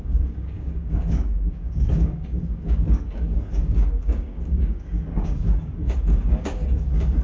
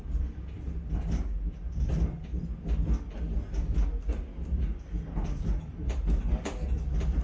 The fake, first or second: first